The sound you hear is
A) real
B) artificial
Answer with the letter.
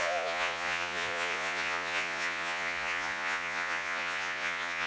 B